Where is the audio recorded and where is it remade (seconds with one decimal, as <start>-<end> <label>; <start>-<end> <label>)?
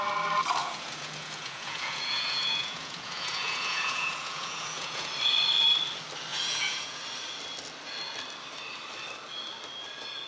0.0-0.6 recorded; 0.6-5.1 remade; 5.1-6.3 recorded; 6.3-7.0 remade; 7.0-10.3 recorded